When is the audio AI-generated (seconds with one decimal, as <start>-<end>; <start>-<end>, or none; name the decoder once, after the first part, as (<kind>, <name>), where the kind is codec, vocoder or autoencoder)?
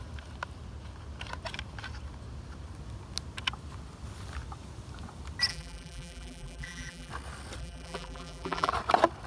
5.5-7.1 (vocoder, BigVGAN v2); 7.6-8.7